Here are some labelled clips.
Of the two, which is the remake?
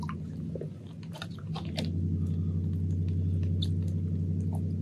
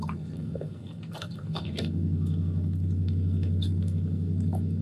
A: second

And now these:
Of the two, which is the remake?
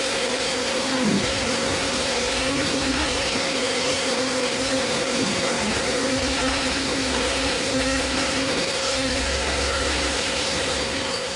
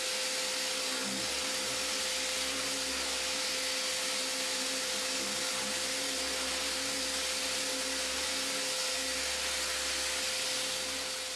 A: first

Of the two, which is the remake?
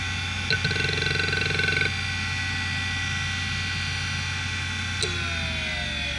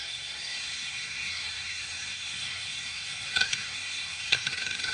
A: second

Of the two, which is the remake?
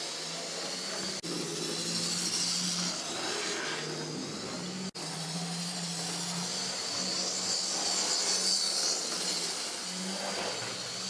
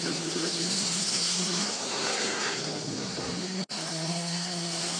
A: second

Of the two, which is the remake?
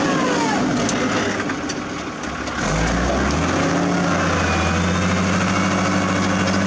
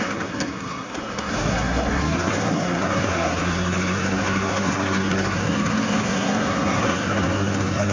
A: second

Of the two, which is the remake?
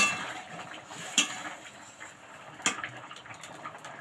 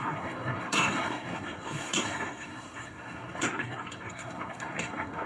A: second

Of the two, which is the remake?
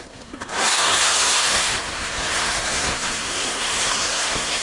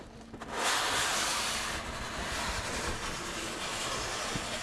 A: first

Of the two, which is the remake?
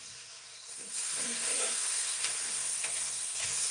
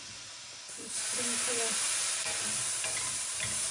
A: first